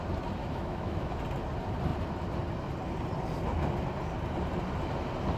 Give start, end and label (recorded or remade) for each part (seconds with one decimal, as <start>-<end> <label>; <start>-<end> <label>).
0.0-0.4 recorded; 0.4-1.2 remade; 1.2-5.4 recorded